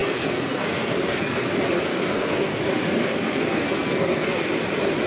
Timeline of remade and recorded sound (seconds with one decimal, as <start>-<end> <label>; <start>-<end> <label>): 0.0-1.5 remade; 1.5-1.9 recorded; 1.9-2.6 remade; 2.6-3.0 recorded; 3.0-4.5 remade; 4.5-5.1 recorded